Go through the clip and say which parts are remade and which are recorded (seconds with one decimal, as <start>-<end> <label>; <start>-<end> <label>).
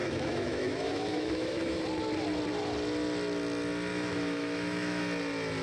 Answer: 0.0-1.8 remade; 1.8-3.9 recorded; 3.9-5.0 remade; 5.0-5.6 recorded